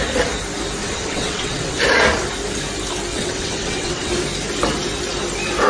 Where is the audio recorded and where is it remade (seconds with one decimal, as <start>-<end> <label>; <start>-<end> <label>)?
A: 0.0-0.8 recorded; 0.8-1.8 remade; 1.8-3.1 recorded; 3.1-4.1 remade; 4.1-5.7 recorded